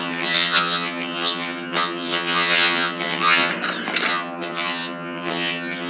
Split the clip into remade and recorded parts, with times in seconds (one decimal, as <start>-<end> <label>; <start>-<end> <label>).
0.0-3.5 remade; 3.5-4.1 recorded; 4.1-5.9 remade

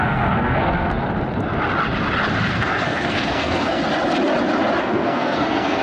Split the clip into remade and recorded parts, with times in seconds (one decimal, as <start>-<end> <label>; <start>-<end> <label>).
0.0-1.0 remade; 1.0-2.5 recorded; 2.5-3.8 remade; 3.8-4.8 recorded; 4.8-5.8 remade

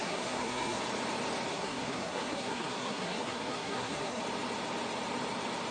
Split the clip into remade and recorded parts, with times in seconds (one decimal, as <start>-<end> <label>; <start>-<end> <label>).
0.0-0.8 remade; 0.8-1.5 recorded; 1.5-4.2 remade; 4.2-5.7 recorded

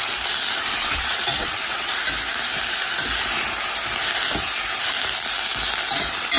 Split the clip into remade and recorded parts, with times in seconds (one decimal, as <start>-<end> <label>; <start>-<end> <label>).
0.0-0.8 recorded; 0.8-1.9 remade; 1.9-6.4 recorded

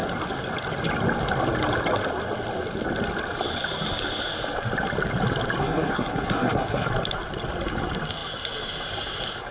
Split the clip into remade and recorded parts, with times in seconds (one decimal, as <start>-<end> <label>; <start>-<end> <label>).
0.0-5.6 recorded; 5.6-6.9 remade; 6.9-9.5 recorded

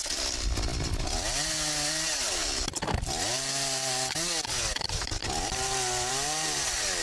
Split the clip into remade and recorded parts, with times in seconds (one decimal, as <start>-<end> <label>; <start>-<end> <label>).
0.0-7.0 recorded

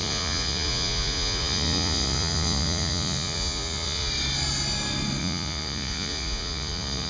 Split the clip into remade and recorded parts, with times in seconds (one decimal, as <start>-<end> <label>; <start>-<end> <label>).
0.0-4.1 remade; 4.1-5.2 recorded; 5.2-7.1 remade